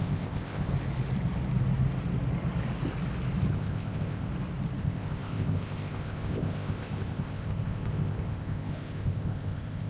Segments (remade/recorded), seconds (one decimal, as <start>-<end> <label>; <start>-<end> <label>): 0.0-0.7 remade; 0.7-3.5 recorded; 3.5-4.3 remade; 4.3-4.8 recorded; 4.8-9.9 remade